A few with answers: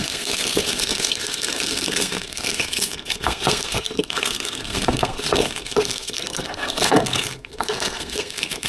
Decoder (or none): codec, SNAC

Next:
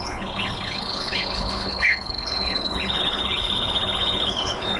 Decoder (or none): codec, HILCodec